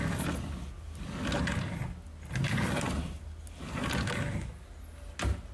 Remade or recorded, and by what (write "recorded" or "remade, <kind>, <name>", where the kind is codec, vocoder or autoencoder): recorded